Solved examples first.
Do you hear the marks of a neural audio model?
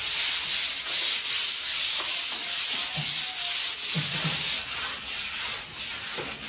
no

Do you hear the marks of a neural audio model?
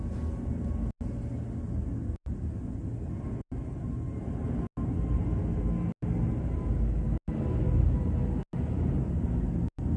no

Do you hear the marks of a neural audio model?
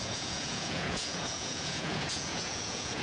yes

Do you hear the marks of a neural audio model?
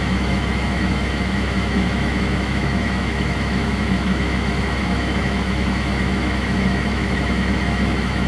yes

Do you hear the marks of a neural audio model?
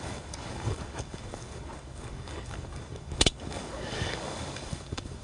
yes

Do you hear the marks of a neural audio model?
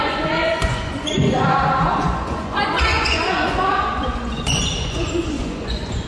yes